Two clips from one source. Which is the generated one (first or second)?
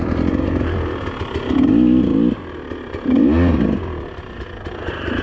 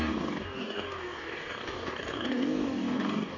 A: second